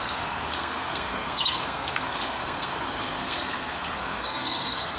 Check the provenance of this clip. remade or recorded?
remade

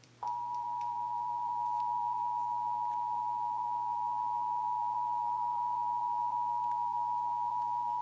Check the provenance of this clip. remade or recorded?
remade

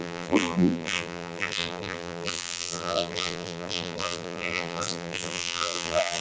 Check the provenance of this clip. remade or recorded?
remade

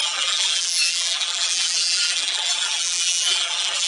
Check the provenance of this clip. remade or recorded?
remade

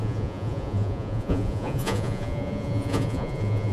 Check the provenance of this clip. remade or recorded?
remade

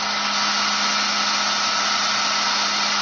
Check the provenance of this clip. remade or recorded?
recorded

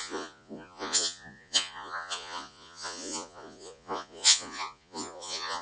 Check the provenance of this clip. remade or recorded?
remade